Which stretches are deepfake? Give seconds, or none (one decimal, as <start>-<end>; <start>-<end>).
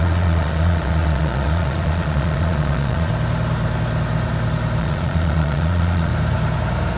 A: 0.0-3.1; 4.8-6.1